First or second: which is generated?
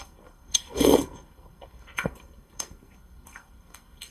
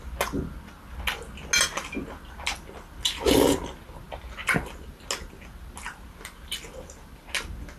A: first